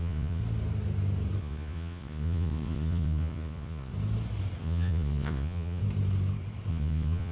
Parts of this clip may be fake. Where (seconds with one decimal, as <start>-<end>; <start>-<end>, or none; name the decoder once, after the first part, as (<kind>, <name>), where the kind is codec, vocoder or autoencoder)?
0.0-0.4 (vocoder, Vocos); 1.4-3.9; 4.6-5.8; 6.7-7.3